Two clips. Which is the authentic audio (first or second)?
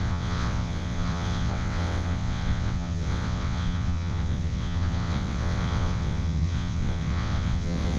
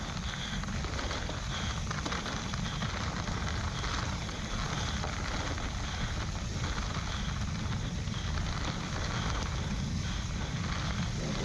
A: second